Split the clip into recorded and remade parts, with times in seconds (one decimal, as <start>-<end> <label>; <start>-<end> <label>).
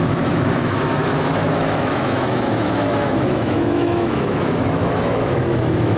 0.0-6.0 remade